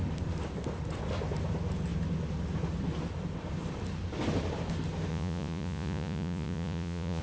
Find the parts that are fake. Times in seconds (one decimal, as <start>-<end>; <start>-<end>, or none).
5.1-7.2